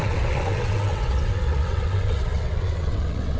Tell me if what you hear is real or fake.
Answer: fake